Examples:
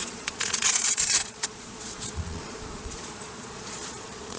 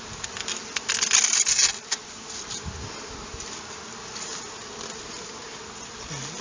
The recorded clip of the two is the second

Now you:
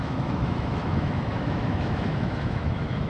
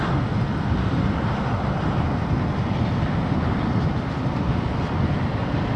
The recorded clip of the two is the second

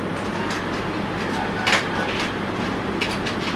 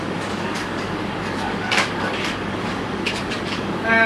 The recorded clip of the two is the first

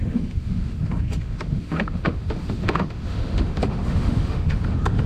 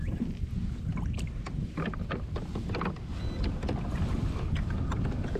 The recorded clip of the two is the second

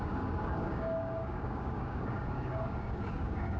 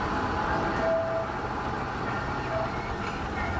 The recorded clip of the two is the second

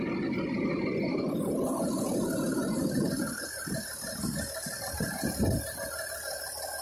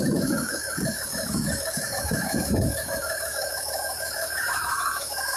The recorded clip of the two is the first